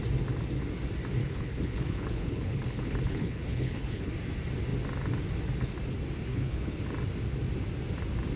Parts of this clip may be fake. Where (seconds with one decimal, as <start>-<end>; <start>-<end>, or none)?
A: 1.2-4.1; 6.3-6.8